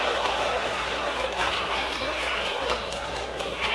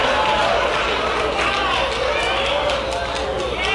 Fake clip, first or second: first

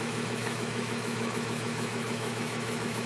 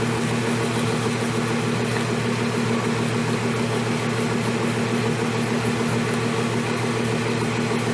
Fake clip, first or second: first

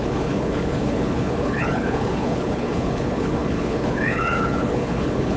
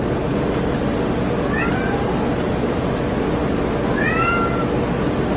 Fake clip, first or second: first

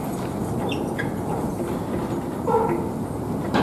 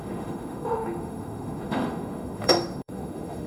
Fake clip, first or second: second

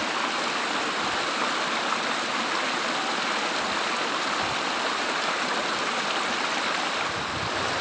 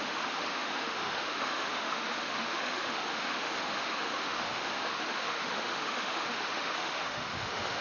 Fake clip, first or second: second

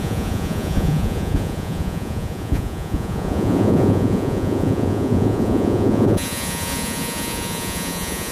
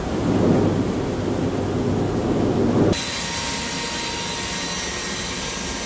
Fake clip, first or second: first